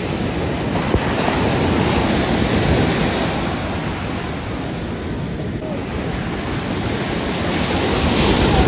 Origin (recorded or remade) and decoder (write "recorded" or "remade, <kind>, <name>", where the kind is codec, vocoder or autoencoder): recorded